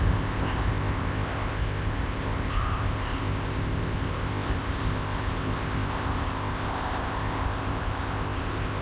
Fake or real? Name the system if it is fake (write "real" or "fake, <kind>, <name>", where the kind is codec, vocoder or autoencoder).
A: fake, codec, ZipCodec